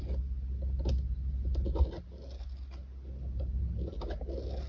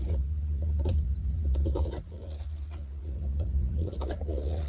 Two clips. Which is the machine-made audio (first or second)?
second